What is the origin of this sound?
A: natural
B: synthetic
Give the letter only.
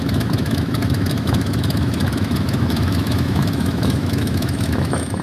B